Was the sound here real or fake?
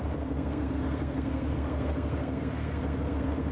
fake